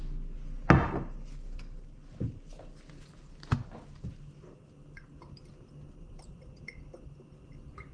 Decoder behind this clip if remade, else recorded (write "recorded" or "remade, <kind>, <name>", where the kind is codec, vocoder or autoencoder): recorded